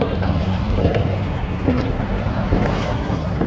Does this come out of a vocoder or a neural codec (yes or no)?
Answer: yes